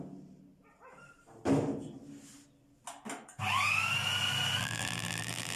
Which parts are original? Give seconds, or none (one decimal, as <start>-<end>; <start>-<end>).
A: 0.0-4.6